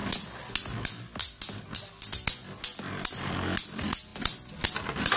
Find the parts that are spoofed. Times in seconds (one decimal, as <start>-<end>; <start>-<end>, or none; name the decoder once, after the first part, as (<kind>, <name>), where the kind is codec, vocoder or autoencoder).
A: none